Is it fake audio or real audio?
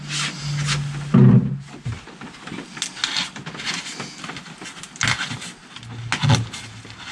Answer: real